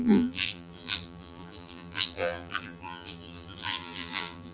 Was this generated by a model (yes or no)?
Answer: yes